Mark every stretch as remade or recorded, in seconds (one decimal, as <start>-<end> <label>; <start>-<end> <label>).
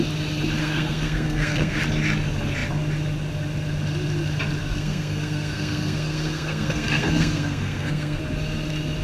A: 0.0-0.6 recorded; 0.6-1.8 remade; 1.8-4.6 recorded; 4.6-8.2 remade; 8.2-9.0 recorded